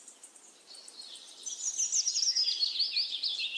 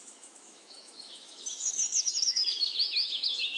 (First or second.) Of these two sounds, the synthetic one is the second